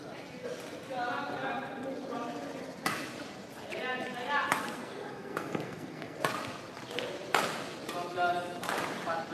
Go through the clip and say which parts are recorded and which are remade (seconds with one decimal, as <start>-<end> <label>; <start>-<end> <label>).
0.0-4.6 recorded; 4.6-6.2 remade; 6.2-9.3 recorded